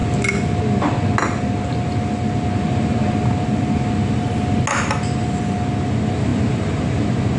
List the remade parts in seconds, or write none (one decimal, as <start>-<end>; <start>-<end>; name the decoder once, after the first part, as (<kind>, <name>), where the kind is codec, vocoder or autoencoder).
none